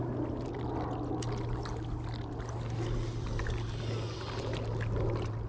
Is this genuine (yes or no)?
yes